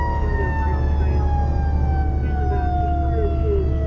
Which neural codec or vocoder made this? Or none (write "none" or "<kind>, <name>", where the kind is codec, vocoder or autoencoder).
none